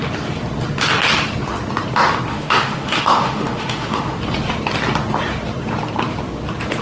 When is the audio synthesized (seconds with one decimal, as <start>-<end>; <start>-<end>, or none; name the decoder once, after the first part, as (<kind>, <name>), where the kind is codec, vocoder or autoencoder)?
2.3-4.2 (autoencoder, DAC-VAE)